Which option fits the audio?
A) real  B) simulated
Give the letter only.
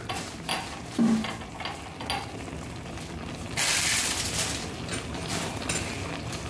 A